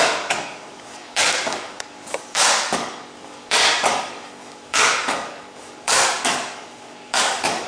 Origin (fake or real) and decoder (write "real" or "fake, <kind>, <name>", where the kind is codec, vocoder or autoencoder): fake, codec, DAC